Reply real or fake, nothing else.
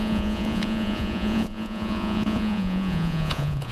fake